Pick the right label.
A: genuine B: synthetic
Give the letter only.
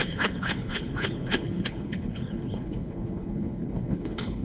B